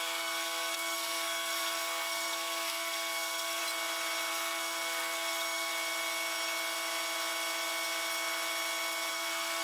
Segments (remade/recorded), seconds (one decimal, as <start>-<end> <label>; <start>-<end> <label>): 0.0-3.6 remade; 3.6-4.3 recorded; 4.3-5.7 remade; 5.7-9.1 recorded; 9.1-9.6 remade